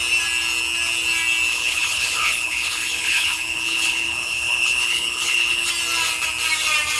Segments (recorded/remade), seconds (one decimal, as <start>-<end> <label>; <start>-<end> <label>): 0.0-1.5 recorded; 1.5-5.7 remade; 5.7-7.0 recorded